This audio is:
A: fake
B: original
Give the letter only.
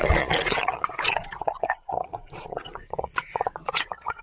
A